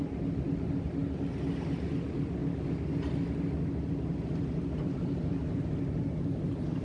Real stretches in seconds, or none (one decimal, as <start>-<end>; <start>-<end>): 0.0-6.8